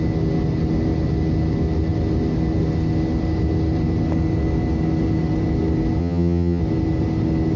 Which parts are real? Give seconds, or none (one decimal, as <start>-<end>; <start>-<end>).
0.0-6.0; 6.6-7.6